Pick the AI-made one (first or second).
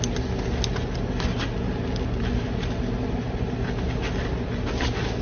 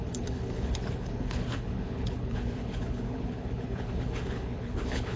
second